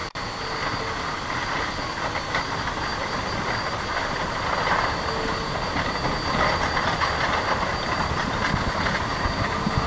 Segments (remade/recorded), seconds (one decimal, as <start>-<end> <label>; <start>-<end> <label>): 0.0-9.9 recorded